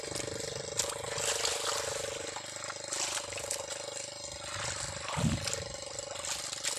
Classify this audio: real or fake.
real